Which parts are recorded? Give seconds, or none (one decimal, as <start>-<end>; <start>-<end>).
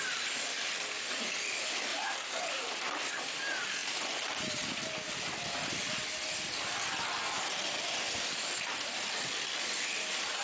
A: 0.0-1.9; 3.1-10.4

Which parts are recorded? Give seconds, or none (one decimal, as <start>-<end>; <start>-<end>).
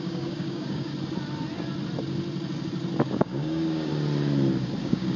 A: 0.9-3.1; 3.9-4.8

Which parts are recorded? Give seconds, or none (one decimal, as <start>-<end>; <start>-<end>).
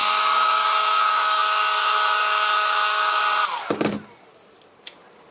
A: 3.2-5.3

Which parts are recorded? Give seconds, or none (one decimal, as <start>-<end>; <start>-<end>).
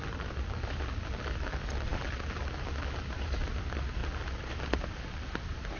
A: 0.0-5.8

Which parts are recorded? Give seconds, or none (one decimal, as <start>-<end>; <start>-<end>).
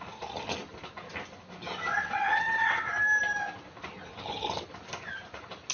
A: 0.0-1.9; 2.9-5.7